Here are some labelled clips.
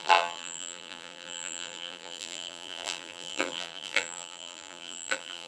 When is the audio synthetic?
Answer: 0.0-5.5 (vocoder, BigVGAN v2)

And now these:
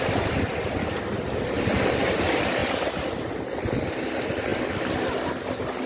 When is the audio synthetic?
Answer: none